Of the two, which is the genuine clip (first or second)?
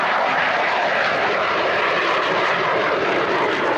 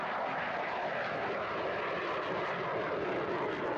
second